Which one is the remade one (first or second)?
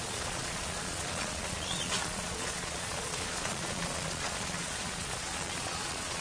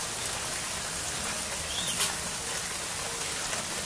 first